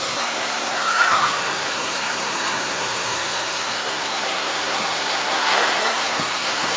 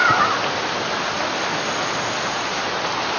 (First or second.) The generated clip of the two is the first